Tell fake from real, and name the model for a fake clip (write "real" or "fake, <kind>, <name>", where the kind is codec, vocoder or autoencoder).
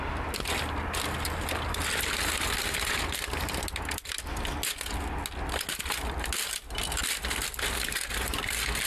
real